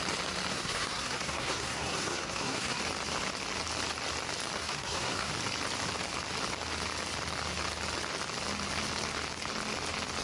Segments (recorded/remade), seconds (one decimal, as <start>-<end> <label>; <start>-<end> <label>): 0.0-0.5 recorded; 0.5-2.8 remade; 2.8-4.6 recorded; 4.6-5.3 remade; 5.3-10.2 recorded